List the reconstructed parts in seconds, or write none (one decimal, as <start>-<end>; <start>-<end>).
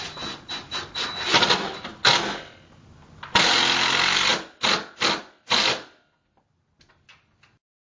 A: none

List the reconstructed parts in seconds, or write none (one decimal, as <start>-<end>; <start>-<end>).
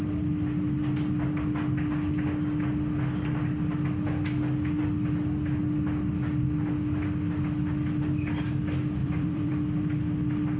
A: 9.0-9.8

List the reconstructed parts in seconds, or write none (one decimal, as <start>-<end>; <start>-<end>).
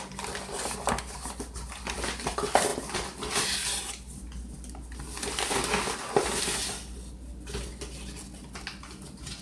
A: none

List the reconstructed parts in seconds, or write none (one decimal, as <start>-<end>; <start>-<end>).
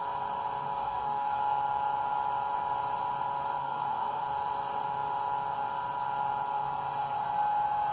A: 0.8-1.4; 3.6-4.2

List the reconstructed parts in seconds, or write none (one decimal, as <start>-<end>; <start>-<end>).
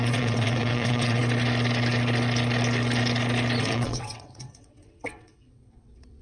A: 0.0-1.2; 3.6-6.2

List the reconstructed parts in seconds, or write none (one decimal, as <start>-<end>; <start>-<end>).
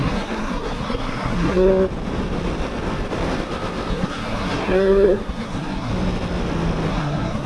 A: 0.0-1.7; 3.9-5.9; 6.9-7.5